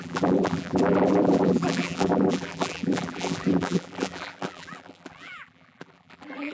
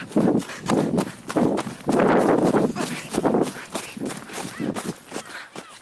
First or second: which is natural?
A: second